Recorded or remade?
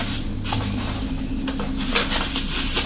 recorded